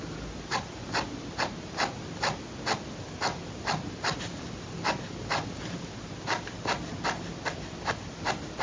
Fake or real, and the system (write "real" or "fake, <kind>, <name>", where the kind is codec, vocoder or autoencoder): real